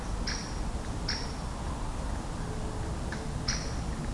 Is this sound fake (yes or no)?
no